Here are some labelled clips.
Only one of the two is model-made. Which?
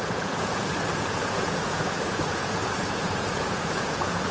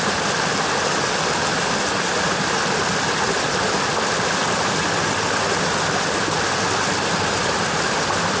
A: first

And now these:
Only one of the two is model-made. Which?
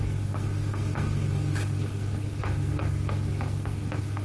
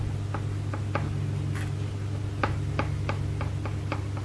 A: first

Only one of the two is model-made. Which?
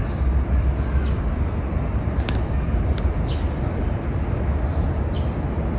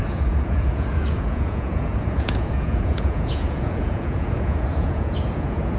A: second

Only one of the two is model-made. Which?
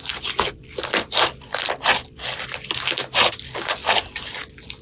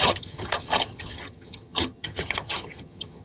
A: second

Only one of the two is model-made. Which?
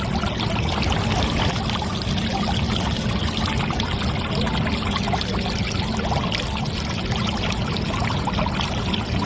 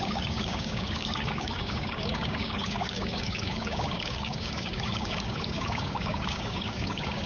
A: second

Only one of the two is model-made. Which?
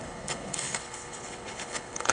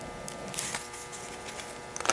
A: first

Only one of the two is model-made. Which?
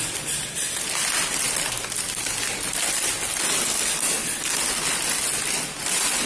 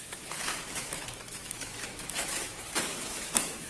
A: second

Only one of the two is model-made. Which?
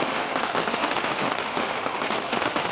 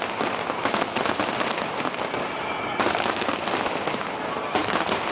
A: first